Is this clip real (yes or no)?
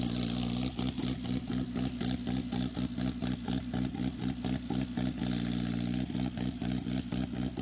yes